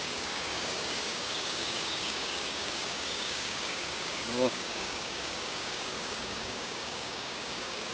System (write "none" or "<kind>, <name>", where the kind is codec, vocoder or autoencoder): codec, DAC